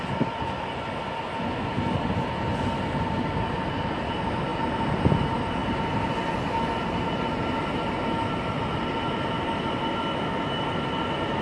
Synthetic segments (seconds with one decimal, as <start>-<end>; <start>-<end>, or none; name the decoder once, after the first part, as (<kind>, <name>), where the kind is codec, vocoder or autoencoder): none